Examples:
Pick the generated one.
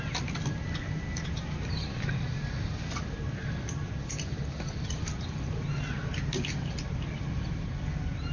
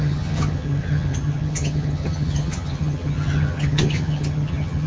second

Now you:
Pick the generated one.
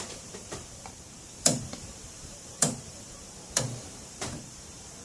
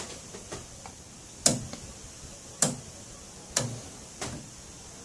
first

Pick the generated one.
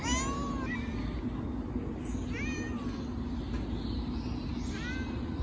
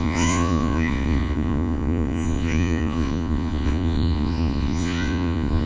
second